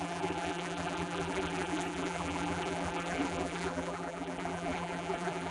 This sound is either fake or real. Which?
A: fake